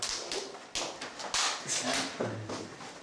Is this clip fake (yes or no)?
no